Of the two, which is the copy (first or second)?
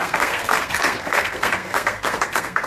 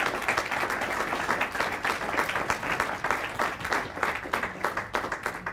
first